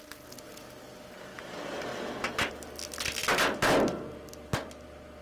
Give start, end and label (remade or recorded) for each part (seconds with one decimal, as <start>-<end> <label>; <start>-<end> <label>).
0.0-5.2 recorded